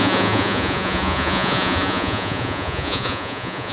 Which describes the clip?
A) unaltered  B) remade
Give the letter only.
B